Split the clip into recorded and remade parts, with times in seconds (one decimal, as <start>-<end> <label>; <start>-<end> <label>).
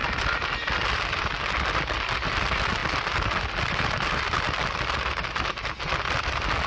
0.0-6.7 recorded